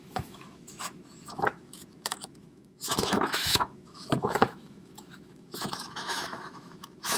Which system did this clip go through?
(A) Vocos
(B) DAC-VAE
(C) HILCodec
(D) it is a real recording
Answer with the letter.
B